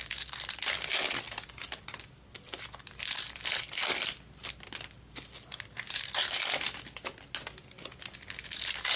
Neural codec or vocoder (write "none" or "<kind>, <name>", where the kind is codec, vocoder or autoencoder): none